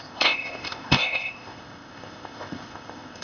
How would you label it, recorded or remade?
remade